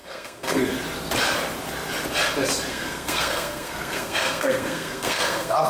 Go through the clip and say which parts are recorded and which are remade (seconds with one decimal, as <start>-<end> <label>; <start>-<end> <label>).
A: 0.0-0.7 remade; 0.7-2.7 recorded; 2.7-5.7 remade